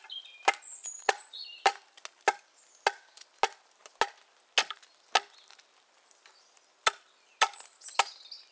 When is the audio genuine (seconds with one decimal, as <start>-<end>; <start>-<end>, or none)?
0.0-0.8; 1.4-8.5